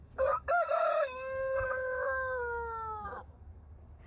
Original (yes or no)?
no